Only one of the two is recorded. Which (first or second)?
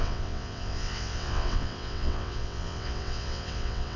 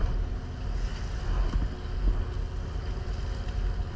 second